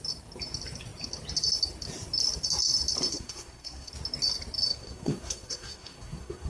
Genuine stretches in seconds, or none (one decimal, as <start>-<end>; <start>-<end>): 0.0-3.1; 3.9-4.7